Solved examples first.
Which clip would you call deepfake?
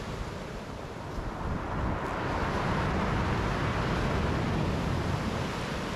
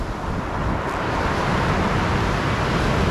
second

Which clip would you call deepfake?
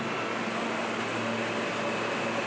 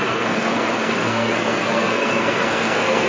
second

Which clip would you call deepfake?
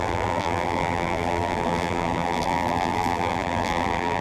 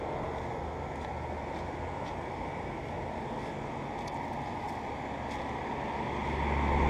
first